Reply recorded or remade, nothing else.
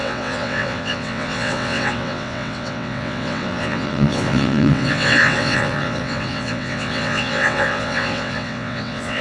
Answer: remade